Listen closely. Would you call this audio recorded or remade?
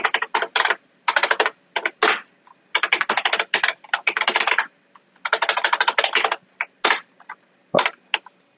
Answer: recorded